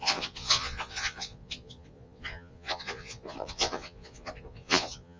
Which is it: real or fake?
fake